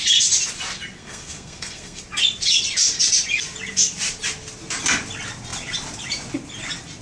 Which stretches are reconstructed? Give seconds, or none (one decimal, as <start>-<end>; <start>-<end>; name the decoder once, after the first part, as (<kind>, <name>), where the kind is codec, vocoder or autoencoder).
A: 1.0-2.0 (codec, SNAC)